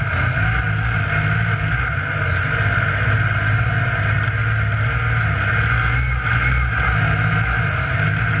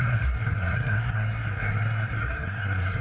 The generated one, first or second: second